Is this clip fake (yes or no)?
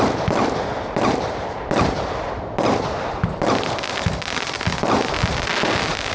no